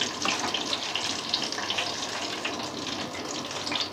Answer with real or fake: real